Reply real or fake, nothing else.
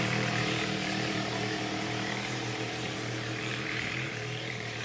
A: fake